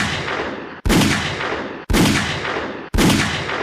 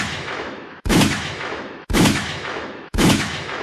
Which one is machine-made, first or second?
second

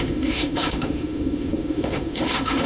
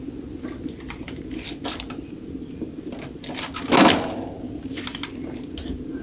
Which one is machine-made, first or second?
first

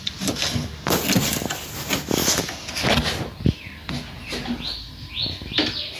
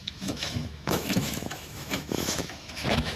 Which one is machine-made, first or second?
second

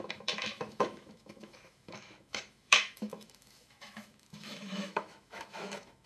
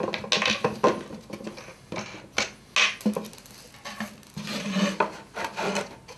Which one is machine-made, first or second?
first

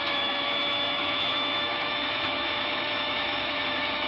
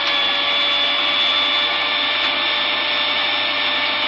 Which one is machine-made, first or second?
first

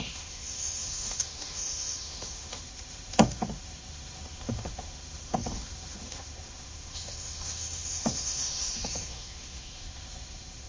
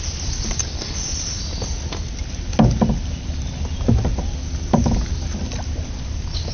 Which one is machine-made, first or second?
first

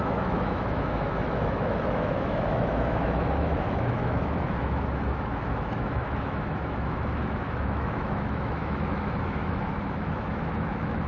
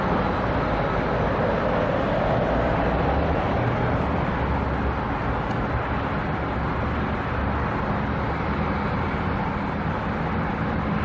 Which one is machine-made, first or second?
first